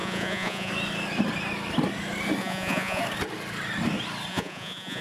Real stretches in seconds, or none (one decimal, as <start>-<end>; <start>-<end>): 0.7-2.4; 3.0-4.3